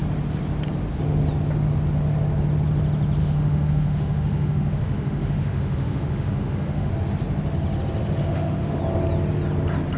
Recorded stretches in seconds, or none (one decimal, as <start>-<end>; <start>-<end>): 0.0-3.2; 6.9-8.2; 8.8-10.0